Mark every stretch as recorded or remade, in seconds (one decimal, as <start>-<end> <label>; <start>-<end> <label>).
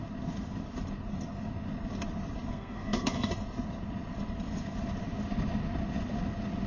0.0-2.5 recorded; 2.5-3.3 remade; 3.3-6.7 recorded